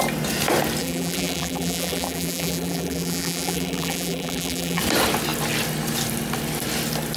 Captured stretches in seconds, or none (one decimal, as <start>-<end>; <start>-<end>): 0.0-0.8; 4.8-7.2